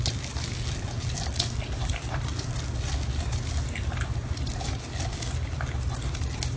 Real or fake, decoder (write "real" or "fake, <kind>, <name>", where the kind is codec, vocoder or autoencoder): real